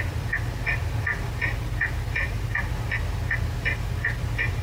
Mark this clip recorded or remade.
recorded